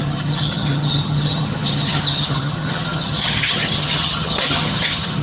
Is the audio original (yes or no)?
no